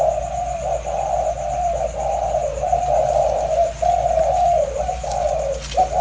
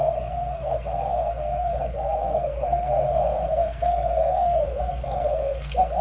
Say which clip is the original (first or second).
first